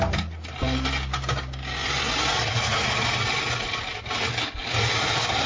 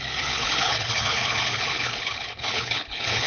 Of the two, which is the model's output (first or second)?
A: second